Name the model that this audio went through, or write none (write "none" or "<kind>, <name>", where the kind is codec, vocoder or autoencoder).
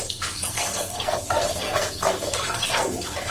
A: codec, SNAC